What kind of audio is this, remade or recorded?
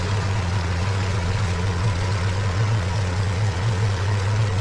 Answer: remade